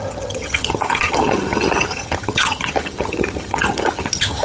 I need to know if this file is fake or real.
fake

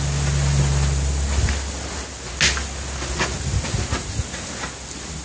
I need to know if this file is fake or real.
real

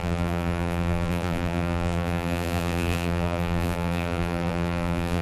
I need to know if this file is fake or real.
fake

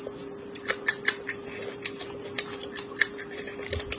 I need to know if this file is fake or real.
real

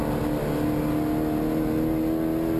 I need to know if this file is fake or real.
real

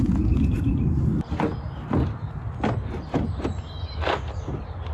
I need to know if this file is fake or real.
real